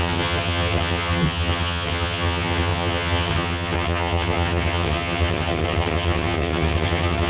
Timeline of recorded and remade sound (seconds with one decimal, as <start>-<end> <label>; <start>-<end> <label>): 0.0-7.3 remade

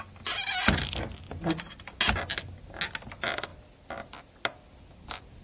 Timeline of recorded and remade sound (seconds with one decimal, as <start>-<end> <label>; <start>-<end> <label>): 0.0-5.4 recorded